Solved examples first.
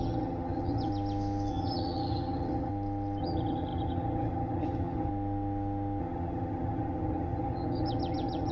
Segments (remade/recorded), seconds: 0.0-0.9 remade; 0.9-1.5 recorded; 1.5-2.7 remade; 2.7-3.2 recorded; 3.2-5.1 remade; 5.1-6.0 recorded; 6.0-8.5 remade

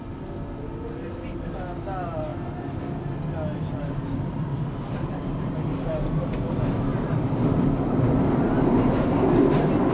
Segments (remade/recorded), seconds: 0.0-9.9 recorded

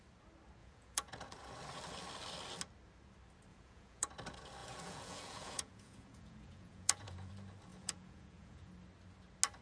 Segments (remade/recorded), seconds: 0.0-0.6 recorded; 0.6-1.1 remade; 1.1-3.5 recorded; 3.5-4.1 remade; 4.1-4.6 recorded; 4.6-7.3 remade; 7.3-7.7 recorded; 7.7-8.7 remade; 8.7-9.6 recorded

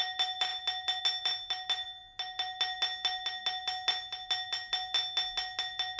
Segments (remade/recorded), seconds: 0.0-6.0 recorded